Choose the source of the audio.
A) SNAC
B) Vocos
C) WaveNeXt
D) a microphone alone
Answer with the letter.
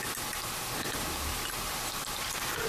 D